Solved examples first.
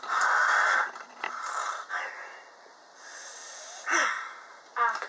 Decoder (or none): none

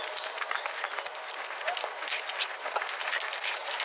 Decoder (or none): none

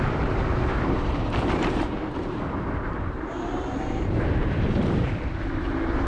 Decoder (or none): vocoder, BigVGAN v2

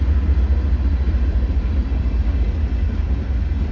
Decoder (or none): none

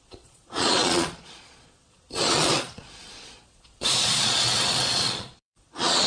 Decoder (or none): vocoder, Vocos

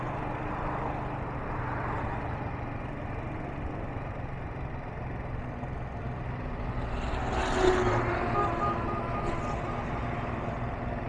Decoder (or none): none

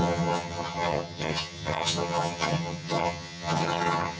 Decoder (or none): vocoder, HiFi-GAN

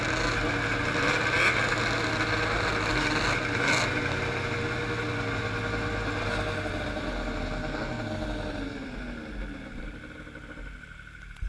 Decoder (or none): none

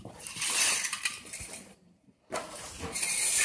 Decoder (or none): vocoder, BigVGAN v2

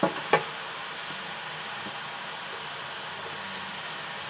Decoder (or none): none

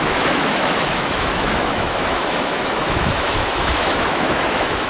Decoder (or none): autoencoder, DAC-VAE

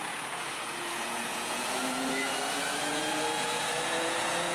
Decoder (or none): vocoder, Vocos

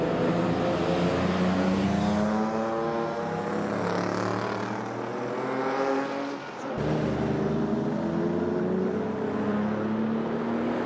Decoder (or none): none